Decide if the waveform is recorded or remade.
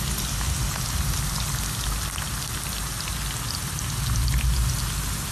recorded